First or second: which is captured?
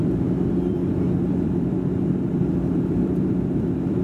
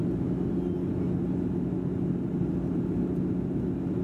second